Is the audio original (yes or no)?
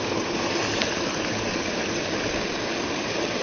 yes